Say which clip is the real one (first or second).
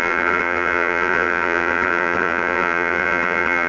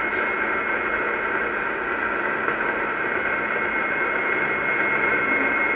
second